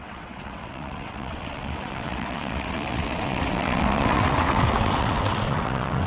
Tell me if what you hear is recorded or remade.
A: remade